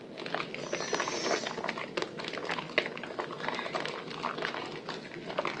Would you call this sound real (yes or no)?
yes